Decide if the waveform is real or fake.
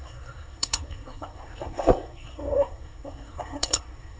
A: fake